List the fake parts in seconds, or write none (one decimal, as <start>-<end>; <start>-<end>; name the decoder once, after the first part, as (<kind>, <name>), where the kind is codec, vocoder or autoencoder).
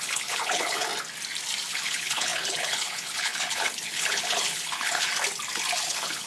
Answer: 0.0-0.9 (codec, HILCodec); 1.7-5.1; 5.8-6.3